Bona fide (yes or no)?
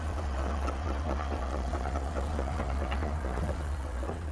no